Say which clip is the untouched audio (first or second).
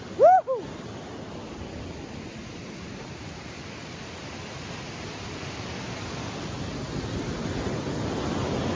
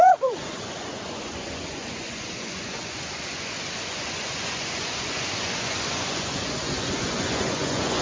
first